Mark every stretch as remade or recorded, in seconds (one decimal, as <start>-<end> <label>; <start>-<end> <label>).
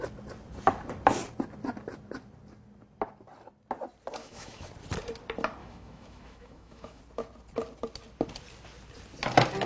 0.0-4.2 recorded; 4.2-4.7 remade; 4.7-5.6 recorded; 5.6-7.0 remade; 7.0-9.7 recorded